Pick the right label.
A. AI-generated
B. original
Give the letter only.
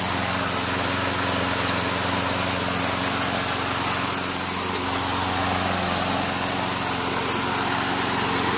B